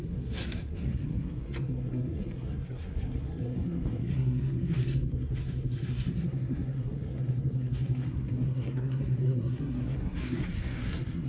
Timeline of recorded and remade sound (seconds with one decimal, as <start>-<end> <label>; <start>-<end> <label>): 0.0-11.3 remade